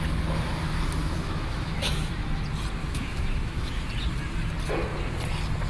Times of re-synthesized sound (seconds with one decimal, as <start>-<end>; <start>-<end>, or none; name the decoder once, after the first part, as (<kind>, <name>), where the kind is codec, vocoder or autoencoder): 1.0-2.1 (autoencoder, DAC-VAE); 2.8-3.8